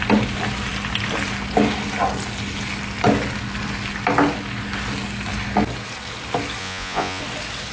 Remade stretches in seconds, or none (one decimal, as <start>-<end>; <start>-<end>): 6.6-7.2